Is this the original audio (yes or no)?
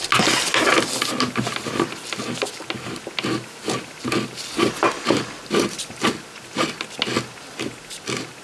yes